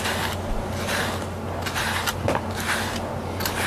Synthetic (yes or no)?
no